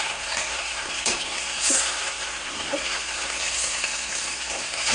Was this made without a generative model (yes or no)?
no